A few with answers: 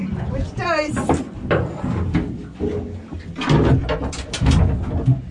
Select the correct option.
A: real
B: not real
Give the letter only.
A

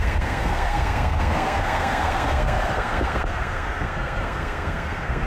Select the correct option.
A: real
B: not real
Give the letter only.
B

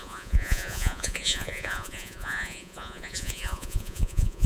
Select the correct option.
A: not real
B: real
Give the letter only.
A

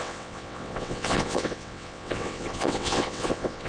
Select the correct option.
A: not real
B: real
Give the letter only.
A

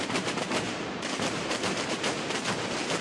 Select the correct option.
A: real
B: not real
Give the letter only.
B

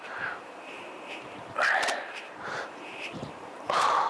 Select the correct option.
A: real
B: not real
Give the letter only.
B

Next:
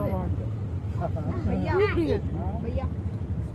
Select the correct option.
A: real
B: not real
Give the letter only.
A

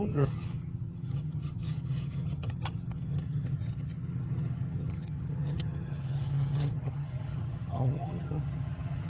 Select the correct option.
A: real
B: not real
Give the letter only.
B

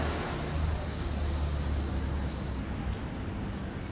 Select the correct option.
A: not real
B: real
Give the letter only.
B